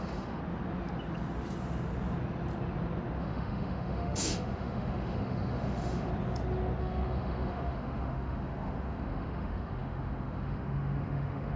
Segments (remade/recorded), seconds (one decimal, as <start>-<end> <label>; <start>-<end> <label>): 0.0-0.4 remade; 0.4-3.2 recorded; 3.2-6.1 remade; 6.1-6.8 recorded; 6.8-11.6 remade